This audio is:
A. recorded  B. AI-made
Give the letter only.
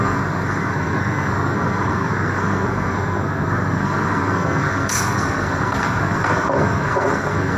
B